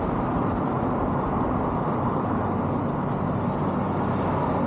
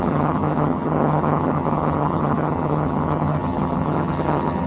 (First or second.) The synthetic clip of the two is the second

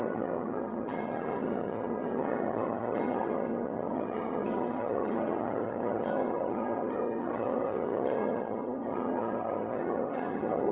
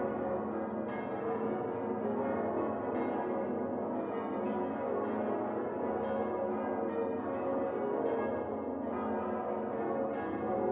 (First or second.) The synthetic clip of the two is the first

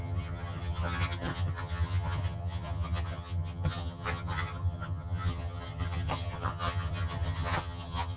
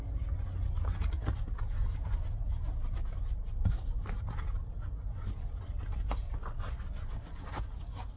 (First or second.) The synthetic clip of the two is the first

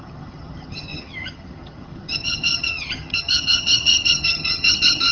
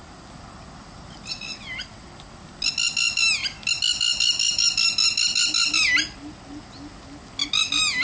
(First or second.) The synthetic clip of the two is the first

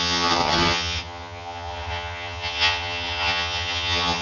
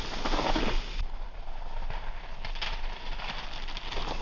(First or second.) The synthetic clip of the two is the first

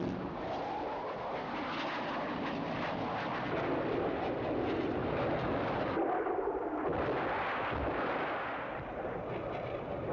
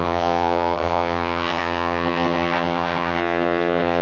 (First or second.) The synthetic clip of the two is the second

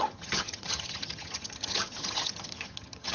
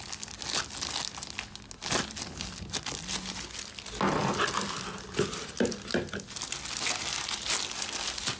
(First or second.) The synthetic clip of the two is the first